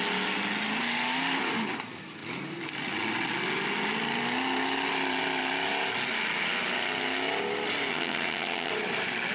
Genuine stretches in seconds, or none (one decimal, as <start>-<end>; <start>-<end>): 0.0-7.9; 8.7-9.3